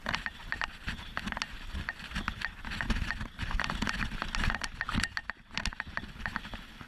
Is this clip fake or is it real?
real